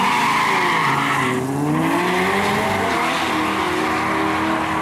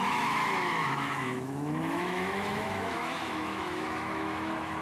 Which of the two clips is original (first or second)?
first